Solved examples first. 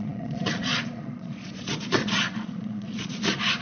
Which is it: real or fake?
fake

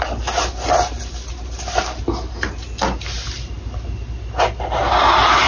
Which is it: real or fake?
real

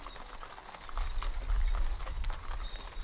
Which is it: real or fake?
real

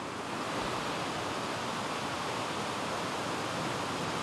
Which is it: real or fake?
real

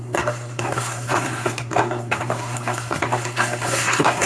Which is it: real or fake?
fake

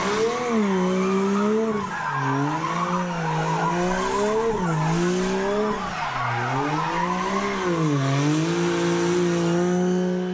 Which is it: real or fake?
real